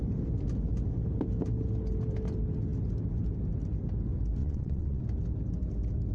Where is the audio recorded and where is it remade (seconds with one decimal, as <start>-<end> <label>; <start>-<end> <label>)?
0.0-4.4 recorded; 4.4-5.0 remade; 5.0-6.1 recorded